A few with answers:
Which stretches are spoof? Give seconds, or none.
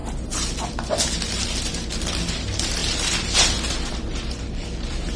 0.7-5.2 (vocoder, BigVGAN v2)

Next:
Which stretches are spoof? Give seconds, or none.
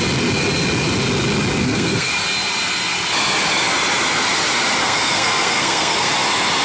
1.6-2.1 (codec, SNAC); 4.8-6.1